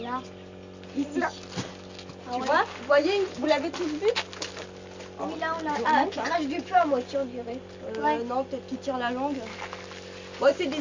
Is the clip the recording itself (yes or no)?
yes